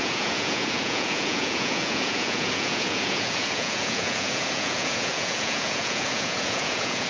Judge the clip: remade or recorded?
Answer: remade